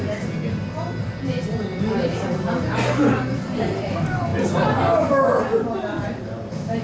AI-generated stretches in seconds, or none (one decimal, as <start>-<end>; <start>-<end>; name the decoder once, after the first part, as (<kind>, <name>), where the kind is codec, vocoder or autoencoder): none